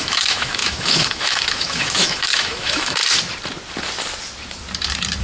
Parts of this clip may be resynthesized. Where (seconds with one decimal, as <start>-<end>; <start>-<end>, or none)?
0.0-3.0